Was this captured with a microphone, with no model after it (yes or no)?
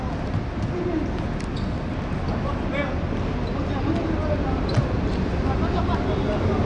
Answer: yes